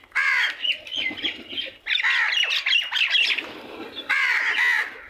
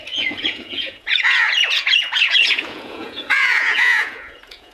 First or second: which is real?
first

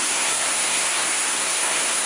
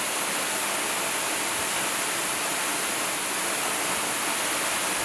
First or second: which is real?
second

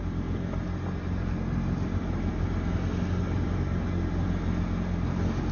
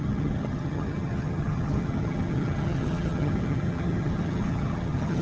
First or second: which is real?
first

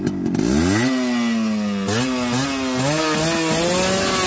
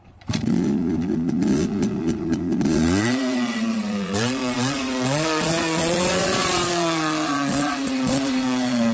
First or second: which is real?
first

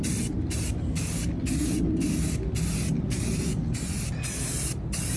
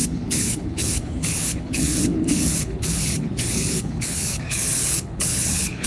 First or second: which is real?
first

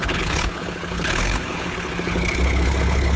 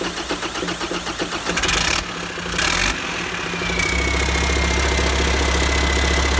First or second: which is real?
second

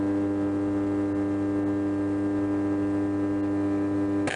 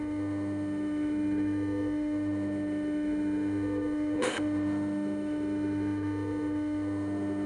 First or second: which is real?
first